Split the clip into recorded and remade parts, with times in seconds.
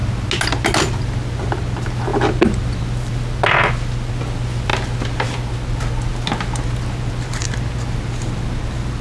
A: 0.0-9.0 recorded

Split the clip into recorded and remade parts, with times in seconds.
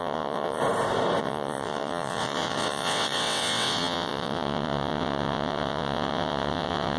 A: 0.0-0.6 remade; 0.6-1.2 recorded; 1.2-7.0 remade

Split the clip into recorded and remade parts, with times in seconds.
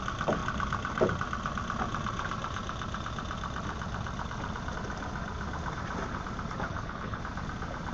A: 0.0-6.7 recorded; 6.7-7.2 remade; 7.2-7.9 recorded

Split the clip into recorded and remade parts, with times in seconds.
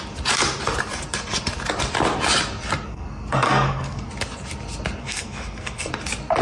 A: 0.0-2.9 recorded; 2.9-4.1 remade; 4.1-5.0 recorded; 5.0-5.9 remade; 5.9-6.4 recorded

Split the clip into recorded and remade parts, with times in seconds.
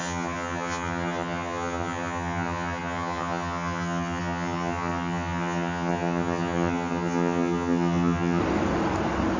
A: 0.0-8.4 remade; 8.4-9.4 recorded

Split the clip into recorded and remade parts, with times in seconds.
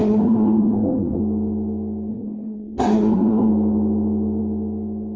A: 0.0-1.2 remade; 1.2-2.1 recorded; 2.1-3.5 remade; 3.5-5.2 recorded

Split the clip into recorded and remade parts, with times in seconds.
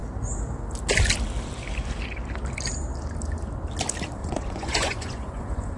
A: 0.0-4.2 recorded; 4.2-5.8 remade